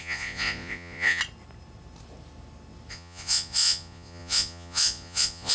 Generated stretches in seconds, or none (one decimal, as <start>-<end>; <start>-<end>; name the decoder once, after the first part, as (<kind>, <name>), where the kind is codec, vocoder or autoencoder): 0.0-1.2 (vocoder, Vocos); 2.9-5.5